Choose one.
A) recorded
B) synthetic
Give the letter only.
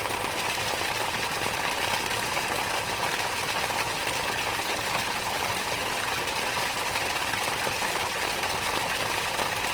A